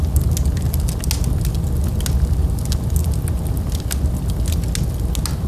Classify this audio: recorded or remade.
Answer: recorded